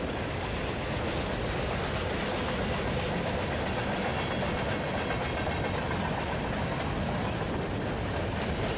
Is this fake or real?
real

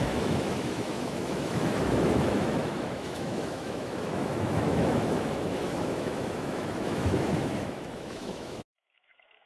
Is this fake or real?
fake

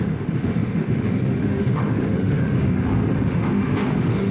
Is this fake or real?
fake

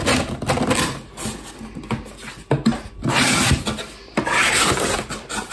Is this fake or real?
real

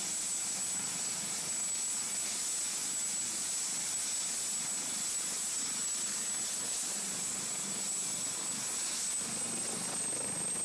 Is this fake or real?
real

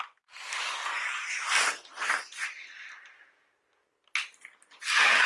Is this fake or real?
real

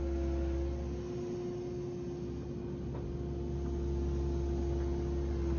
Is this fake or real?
real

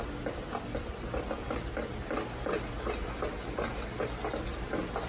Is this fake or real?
real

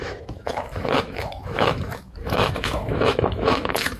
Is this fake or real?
fake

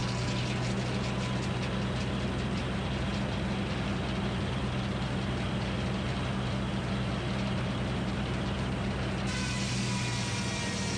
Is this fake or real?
real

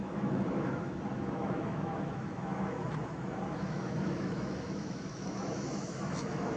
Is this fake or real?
fake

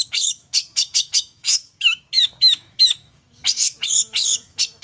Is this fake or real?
fake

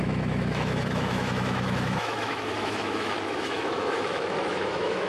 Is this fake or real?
fake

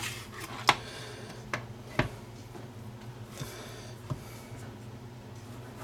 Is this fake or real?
real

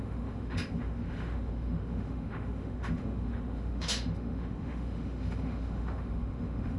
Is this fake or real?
fake